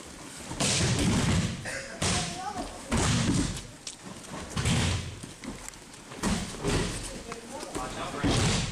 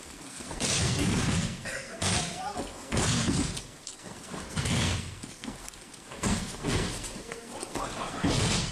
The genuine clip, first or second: first